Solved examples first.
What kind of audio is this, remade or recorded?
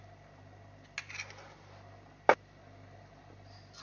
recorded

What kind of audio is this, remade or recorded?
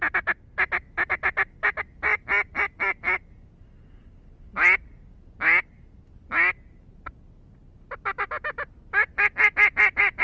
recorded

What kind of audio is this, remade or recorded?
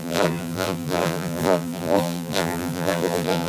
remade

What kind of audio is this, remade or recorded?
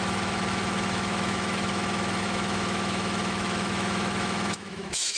remade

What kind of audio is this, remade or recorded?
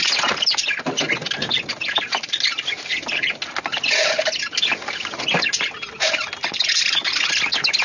recorded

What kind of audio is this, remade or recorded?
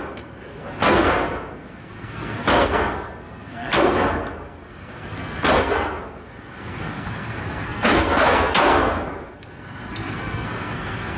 remade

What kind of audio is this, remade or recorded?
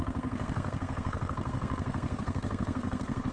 remade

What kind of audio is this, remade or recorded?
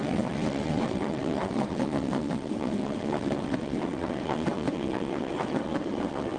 remade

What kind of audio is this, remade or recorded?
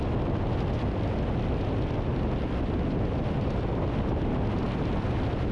recorded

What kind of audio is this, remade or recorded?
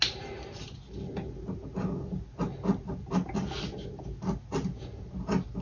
recorded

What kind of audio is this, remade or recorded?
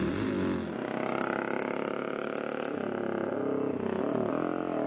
recorded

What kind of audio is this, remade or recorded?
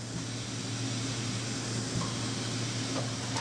recorded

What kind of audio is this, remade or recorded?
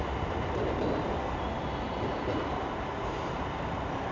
recorded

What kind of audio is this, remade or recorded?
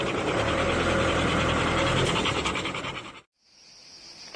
recorded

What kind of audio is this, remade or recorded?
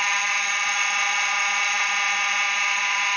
remade